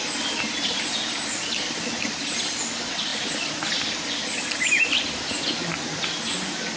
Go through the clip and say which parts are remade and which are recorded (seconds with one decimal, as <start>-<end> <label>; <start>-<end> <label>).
0.0-3.1 recorded; 3.1-4.7 remade; 4.7-6.8 recorded